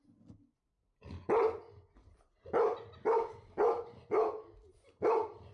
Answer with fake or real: real